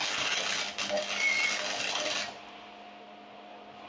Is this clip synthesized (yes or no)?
no